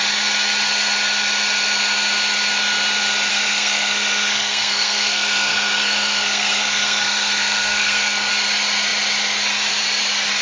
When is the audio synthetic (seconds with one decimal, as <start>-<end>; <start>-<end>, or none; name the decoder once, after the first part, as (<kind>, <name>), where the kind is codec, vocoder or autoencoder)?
3.3-8.3 (codec, SNAC)